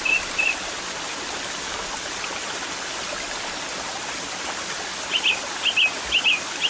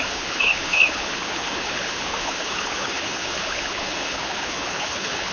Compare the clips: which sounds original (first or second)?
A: first